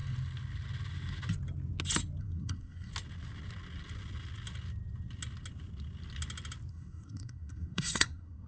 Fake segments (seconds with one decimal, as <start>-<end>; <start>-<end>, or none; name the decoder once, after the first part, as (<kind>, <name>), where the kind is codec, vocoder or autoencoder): 2.2-2.9 (codec, SNAC); 6.7-8.5